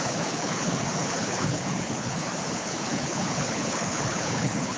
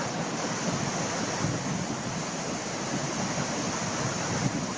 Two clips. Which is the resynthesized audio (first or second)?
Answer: first